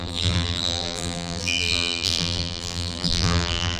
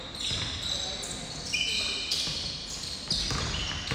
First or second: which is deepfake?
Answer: first